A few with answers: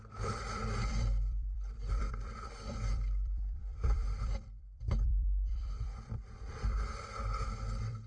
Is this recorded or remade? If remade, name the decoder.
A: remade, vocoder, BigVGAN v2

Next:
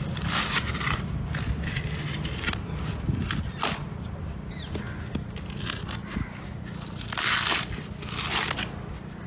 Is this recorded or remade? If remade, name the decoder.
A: recorded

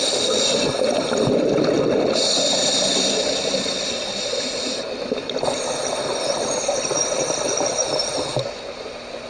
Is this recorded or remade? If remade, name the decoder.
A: remade, vocoder, BigVGAN v2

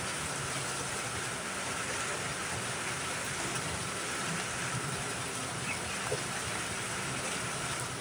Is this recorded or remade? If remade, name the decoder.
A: remade, vocoder, BigVGAN v2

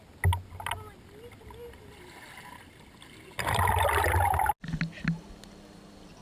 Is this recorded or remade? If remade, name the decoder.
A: recorded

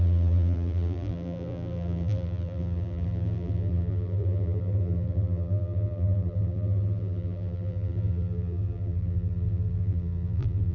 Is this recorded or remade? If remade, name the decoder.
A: remade, vocoder, BigVGAN v2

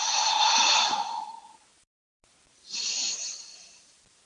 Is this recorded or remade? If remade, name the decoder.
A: remade, vocoder, BigVGAN v2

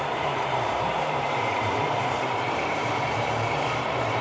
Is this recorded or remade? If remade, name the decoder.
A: remade, vocoder, BigVGAN v2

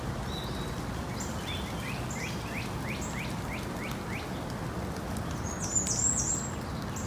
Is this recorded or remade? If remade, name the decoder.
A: recorded